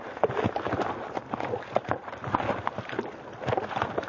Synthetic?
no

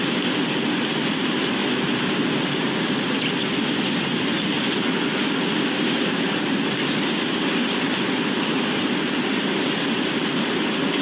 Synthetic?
no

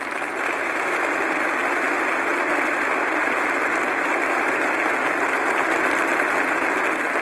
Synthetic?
no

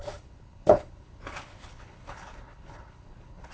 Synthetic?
yes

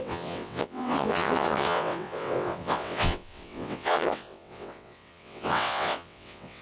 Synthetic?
yes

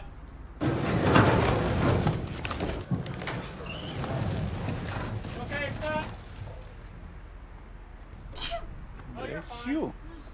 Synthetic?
no